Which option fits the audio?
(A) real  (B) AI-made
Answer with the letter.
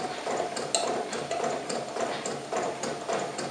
A